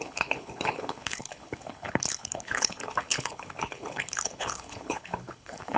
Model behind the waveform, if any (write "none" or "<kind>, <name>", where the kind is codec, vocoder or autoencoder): codec, HILCodec